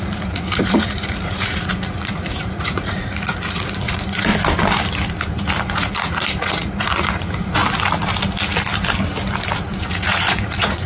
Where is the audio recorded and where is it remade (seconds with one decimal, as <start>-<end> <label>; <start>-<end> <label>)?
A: 0.0-4.3 remade; 4.3-5.6 recorded; 5.6-7.6 remade; 7.6-9.7 recorded; 9.7-10.9 remade